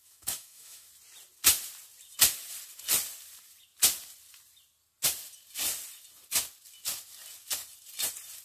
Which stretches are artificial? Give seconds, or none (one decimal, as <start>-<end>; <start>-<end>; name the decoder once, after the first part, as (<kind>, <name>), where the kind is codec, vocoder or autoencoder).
0.0-0.9 (autoencoder, DAC-VAE)